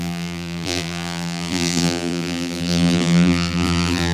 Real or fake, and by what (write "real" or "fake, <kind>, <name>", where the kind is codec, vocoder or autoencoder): fake, vocoder, BigVGAN v2